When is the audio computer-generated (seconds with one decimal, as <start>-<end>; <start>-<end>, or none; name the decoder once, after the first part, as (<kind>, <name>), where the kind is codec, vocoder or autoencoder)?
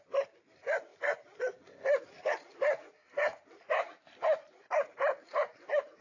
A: 2.2-2.9 (vocoder, BigVGAN v2); 3.3-6.0